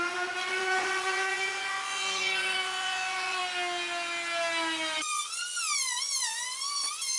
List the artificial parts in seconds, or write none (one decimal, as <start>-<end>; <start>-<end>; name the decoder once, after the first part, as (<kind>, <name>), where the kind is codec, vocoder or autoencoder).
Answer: 0.0-3.4 (vocoder, Vocos); 5.0-7.2